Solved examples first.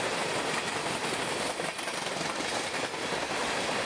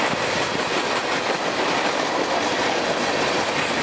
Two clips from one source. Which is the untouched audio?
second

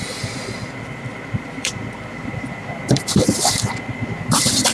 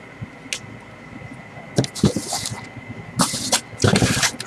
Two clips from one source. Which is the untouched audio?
second